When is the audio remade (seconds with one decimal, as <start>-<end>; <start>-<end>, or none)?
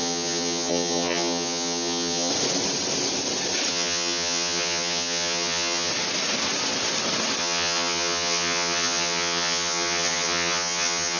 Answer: 0.0-2.3; 3.7-5.9; 7.4-11.2